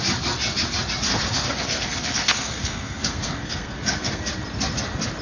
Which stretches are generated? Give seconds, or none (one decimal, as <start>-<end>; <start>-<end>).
1.1-4.2